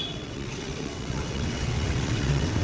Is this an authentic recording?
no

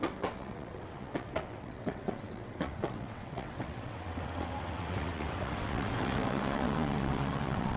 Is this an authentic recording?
no